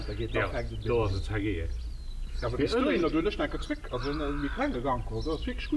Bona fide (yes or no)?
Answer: yes